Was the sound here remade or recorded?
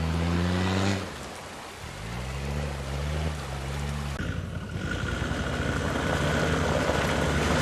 recorded